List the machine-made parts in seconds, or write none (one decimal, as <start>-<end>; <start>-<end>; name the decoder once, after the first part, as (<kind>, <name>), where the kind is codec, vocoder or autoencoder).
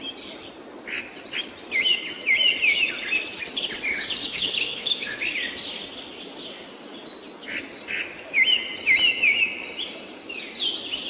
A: 4.3-5.2 (autoencoder, DAC-VAE)